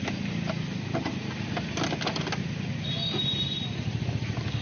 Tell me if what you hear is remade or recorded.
recorded